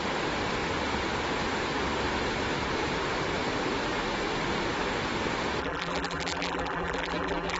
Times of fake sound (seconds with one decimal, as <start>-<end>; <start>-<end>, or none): 5.6-7.6